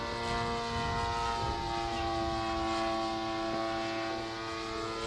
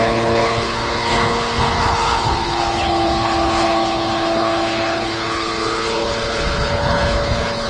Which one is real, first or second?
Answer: first